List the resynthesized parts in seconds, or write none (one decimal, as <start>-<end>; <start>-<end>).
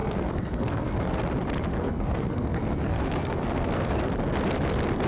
0.0-1.1; 1.7-3.9